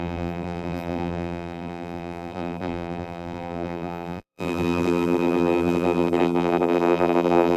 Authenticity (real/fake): fake